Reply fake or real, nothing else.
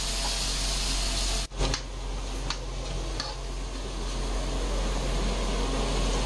real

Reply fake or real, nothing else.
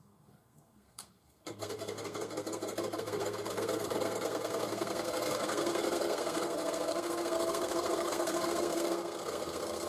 fake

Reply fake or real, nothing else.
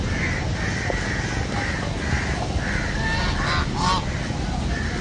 real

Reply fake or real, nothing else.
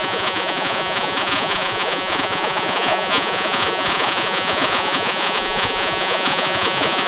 fake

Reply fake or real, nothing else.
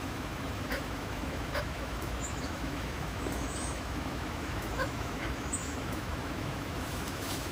fake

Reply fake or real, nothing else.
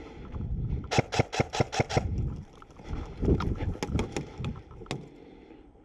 real